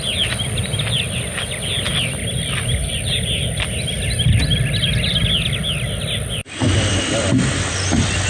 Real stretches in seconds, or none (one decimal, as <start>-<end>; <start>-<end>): 0.0-8.3

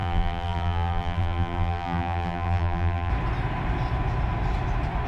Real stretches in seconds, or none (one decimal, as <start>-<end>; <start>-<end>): 3.1-5.1

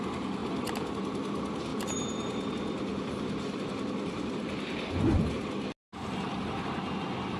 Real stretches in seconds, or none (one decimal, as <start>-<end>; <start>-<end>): 0.0-0.4; 0.9-1.7; 2.5-2.9; 3.7-7.4

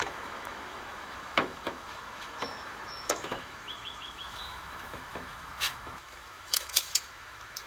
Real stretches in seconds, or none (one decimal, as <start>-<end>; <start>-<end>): none